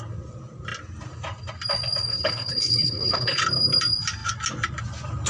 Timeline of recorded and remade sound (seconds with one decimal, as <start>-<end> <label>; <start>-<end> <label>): 0.0-2.1 recorded; 2.1-3.4 remade; 3.4-5.3 recorded